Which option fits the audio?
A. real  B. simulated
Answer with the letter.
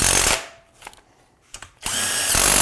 A